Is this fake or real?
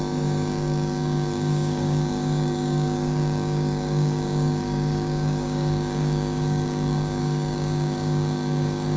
fake